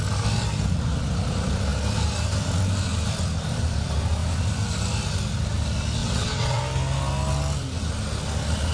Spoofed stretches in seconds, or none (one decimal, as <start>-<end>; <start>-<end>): 6.0-6.6